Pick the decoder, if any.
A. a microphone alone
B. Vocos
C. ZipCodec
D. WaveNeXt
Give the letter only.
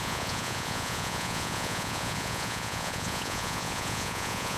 B